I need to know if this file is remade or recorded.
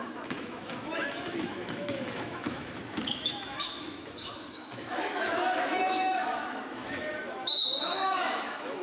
remade